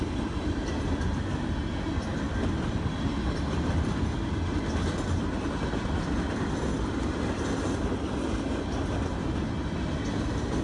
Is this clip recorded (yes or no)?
yes